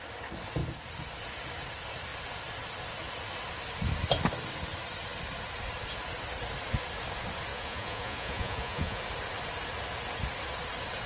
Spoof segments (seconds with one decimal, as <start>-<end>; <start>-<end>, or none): 7.5-9.0